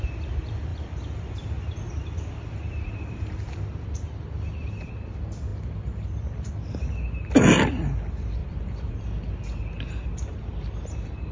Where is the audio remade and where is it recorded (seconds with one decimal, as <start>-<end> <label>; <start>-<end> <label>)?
0.0-0.7 recorded; 0.7-3.4 remade; 3.4-5.5 recorded; 5.5-6.5 remade; 6.5-8.4 recorded; 8.4-9.0 remade; 9.0-11.3 recorded